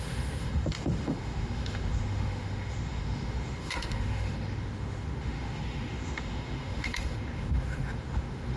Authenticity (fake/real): fake